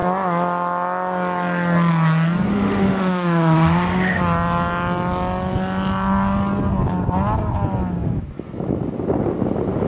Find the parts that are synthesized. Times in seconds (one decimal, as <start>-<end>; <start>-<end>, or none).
2.5-4.2